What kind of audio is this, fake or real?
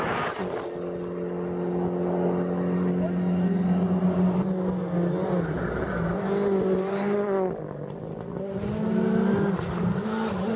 real